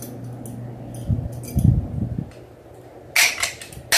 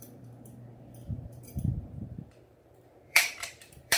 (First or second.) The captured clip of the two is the first